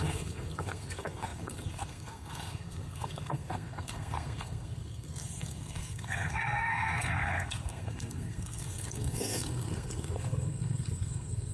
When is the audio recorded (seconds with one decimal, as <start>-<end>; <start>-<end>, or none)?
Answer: none